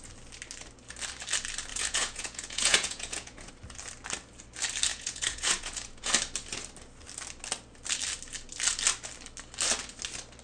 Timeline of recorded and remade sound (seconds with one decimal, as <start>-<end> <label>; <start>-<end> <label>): 0.0-1.7 recorded; 1.7-3.5 remade; 3.5-4.9 recorded; 4.9-6.1 remade; 6.1-10.4 recorded